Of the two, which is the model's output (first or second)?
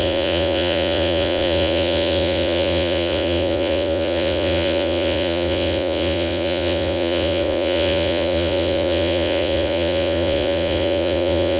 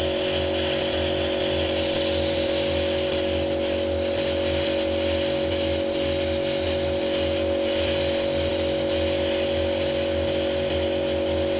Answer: first